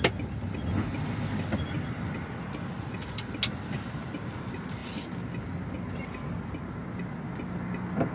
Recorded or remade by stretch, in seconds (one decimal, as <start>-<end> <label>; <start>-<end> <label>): 0.0-8.1 recorded

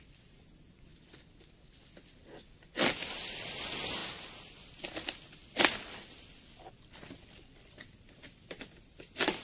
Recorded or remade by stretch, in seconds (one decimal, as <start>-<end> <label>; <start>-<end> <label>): 0.0-0.9 remade; 0.9-2.6 recorded; 2.6-9.4 remade

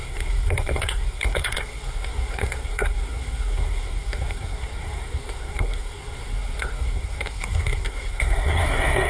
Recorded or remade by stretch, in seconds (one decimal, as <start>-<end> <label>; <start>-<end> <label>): 0.0-9.1 remade

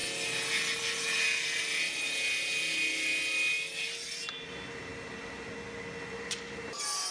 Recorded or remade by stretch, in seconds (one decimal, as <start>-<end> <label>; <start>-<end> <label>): 0.0-7.1 recorded